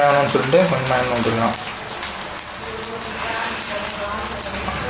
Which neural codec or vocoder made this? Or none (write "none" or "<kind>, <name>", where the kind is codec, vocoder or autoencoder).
none